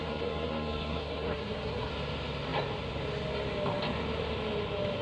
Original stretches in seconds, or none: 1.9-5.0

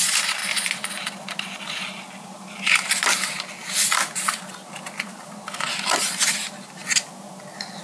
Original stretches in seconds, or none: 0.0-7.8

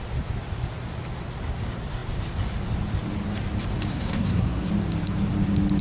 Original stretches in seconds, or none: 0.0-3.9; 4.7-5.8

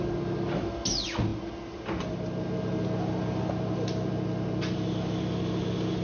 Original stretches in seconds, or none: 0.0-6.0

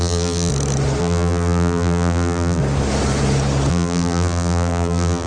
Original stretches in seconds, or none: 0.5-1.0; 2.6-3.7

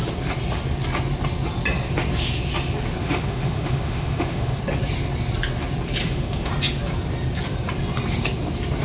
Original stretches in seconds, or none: 0.0-3.0; 4.6-6.0; 6.5-8.8